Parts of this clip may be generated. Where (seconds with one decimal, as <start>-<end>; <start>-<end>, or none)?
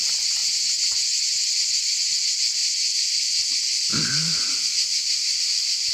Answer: 0.0-2.6; 3.3-3.9; 4.6-5.9